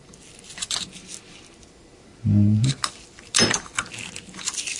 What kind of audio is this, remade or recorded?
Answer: recorded